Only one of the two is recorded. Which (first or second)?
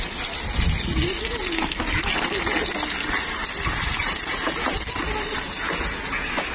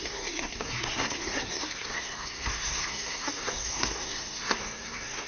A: first